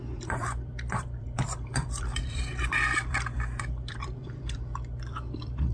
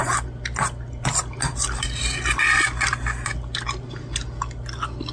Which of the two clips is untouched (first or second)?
second